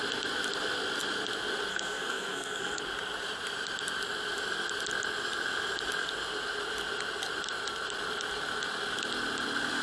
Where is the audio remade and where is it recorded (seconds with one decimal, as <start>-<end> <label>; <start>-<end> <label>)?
0.0-1.7 recorded; 1.7-2.8 remade; 2.8-9.8 recorded